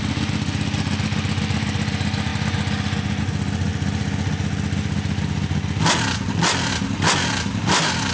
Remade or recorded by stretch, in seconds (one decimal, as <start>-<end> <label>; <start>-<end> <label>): 0.0-8.1 recorded